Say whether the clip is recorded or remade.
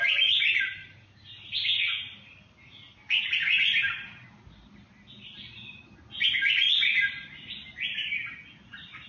recorded